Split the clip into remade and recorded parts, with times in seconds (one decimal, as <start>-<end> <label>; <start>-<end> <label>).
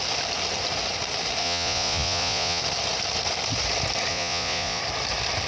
0.0-1.4 recorded; 1.4-2.6 remade; 2.6-4.1 recorded; 4.1-4.8 remade; 4.8-5.5 recorded